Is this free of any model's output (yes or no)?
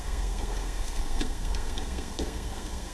no